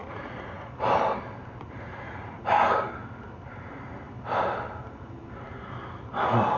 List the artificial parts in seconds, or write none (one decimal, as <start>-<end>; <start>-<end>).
0.0-0.7; 1.9-2.4